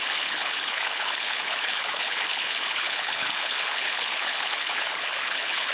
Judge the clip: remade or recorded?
remade